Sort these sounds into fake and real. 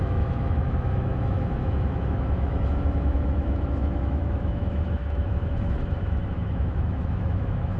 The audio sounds fake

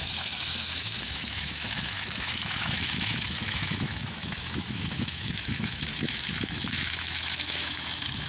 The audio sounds fake